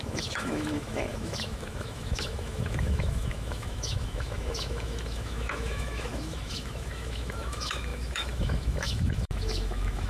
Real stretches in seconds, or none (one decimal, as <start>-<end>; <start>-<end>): none